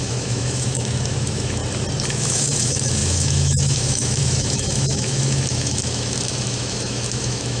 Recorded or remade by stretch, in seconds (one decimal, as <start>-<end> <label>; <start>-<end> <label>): 0.0-1.6 remade; 1.6-2.1 recorded; 2.1-7.6 remade